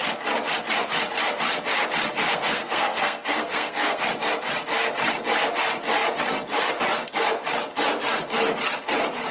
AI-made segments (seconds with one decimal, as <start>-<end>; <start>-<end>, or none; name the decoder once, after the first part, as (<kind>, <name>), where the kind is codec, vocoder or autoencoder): 2.3-4.0 (codec, SNAC)